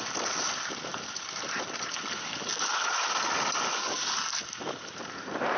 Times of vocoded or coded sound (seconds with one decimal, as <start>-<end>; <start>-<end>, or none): 0.9-2.7